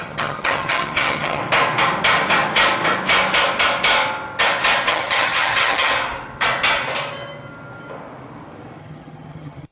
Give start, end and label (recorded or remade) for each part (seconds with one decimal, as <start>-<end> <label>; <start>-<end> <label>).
0.0-1.4 remade; 1.4-4.9 recorded; 4.9-5.9 remade; 5.9-8.8 recorded; 8.8-9.7 remade